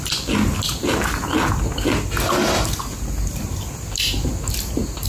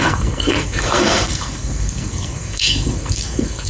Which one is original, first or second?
first